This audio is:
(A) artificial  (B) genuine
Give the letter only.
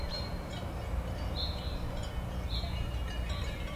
A